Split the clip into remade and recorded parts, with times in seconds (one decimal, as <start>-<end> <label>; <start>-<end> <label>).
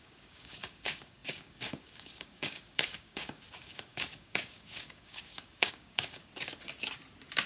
0.0-6.2 remade; 6.2-7.5 recorded